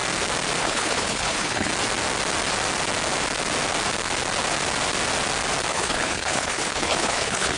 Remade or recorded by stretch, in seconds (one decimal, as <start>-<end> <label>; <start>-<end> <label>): 0.0-0.6 recorded; 0.6-1.7 remade; 1.7-5.7 recorded; 5.7-7.6 remade